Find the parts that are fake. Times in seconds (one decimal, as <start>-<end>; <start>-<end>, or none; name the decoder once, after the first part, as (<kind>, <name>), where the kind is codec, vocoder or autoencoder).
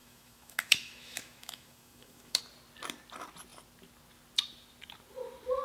0.0-2.4 (autoencoder, DAC-VAE)